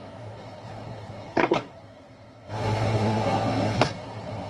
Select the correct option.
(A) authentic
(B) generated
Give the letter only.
B